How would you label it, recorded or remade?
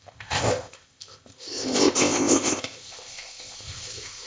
remade